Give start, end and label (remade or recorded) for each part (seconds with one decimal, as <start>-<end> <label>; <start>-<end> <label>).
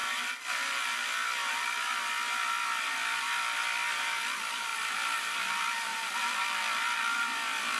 0.0-4.2 recorded; 4.2-4.7 remade; 4.7-5.2 recorded; 5.2-5.9 remade; 5.9-6.6 recorded; 6.6-7.8 remade